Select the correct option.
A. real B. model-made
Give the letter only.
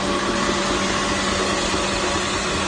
A